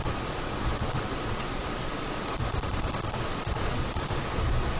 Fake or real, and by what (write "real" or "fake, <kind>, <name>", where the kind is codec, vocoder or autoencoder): fake, vocoder, Vocos